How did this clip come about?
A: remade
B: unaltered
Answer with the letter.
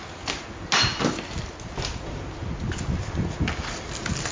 B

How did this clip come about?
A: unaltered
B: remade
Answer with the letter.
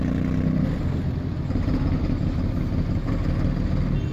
A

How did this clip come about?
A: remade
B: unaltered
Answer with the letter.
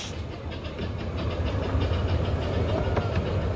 B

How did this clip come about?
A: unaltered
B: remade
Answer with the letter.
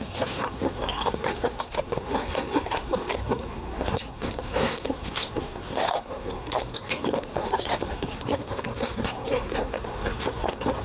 B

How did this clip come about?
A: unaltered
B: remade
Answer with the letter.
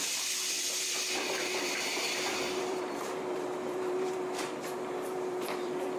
B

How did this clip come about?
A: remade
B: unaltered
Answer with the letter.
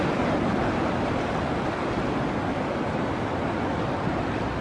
B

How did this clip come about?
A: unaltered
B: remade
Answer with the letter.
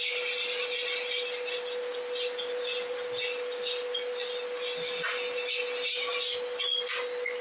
A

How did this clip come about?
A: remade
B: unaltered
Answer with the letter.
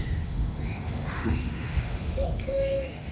A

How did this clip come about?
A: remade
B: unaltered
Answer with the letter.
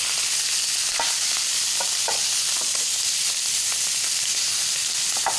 B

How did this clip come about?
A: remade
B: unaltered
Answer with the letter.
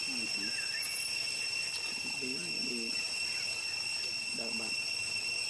B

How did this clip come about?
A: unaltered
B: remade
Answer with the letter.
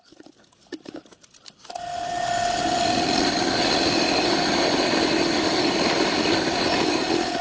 A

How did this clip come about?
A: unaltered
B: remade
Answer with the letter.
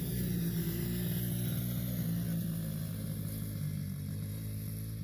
A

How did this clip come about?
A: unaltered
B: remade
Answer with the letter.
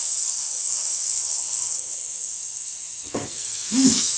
B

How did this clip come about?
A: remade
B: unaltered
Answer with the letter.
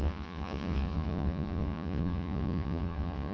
A